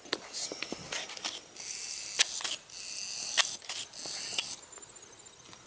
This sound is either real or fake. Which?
real